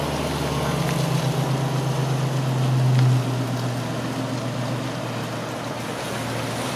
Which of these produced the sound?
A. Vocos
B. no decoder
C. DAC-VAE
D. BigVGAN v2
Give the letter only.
B